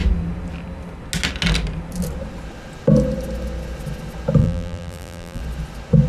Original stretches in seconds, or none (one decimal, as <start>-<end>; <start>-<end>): 0.0-4.4; 5.4-6.1